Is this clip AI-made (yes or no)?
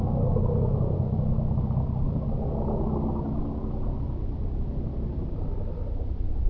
no